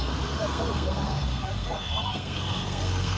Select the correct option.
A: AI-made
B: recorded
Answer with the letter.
A